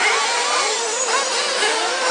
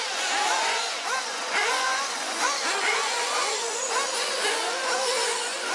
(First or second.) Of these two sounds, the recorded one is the first